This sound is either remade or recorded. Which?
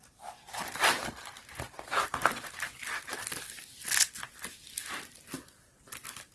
recorded